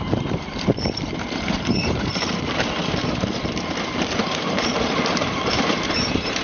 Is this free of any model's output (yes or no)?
no